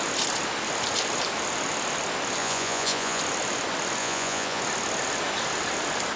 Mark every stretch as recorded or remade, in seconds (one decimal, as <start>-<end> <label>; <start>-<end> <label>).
0.0-2.4 recorded; 2.4-3.2 remade; 3.2-4.0 recorded; 4.0-4.6 remade; 4.6-6.2 recorded